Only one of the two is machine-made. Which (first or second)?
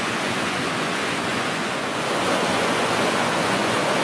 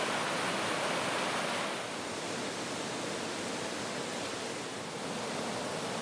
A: first